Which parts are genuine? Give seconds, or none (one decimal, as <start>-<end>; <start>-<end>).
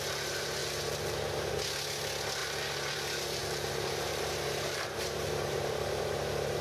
0.0-0.6; 1.5-3.4; 6.0-6.6